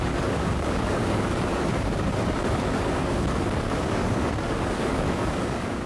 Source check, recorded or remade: remade